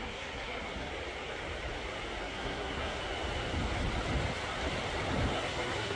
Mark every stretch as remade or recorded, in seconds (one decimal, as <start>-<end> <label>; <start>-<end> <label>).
0.0-0.9 remade; 0.9-2.2 recorded; 2.2-3.0 remade; 3.0-5.3 recorded; 5.3-6.0 remade